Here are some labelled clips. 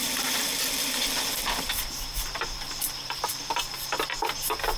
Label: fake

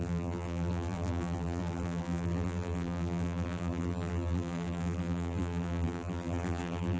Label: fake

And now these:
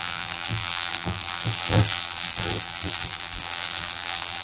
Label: fake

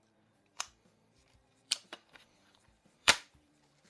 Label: fake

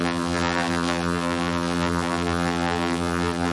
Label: fake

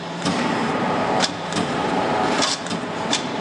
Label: fake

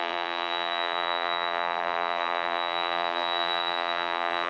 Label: fake